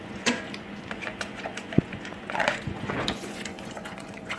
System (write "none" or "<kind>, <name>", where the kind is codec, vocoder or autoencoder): vocoder, Vocos